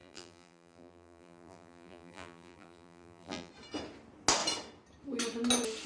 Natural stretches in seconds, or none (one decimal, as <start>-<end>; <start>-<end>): 3.5-5.9

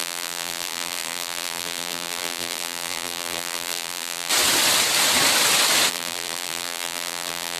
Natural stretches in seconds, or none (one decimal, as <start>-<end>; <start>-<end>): 4.3-5.9

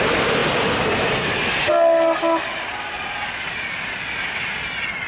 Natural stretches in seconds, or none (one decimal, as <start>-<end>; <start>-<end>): 0.0-5.1

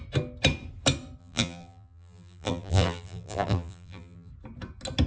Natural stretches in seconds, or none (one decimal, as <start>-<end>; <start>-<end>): 0.0-1.2; 4.3-5.1